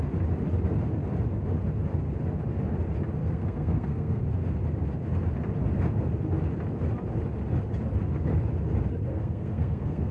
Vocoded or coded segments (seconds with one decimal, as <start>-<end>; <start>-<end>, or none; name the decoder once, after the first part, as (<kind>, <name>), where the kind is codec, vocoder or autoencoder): 3.2-4.2 (codec, SNAC); 9.1-10.1